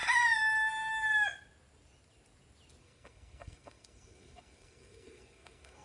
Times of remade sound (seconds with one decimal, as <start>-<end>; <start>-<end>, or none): 2.8-5.8